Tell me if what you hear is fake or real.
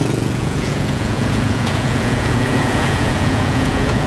fake